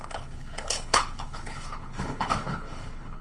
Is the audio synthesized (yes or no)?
yes